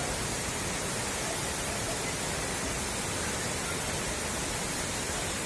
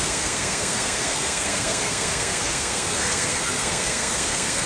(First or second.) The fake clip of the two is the second